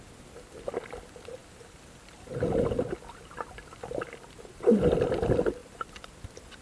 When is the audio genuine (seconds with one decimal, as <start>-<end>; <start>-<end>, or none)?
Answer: 0.0-6.6